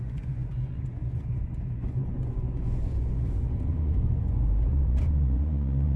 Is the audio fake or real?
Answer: fake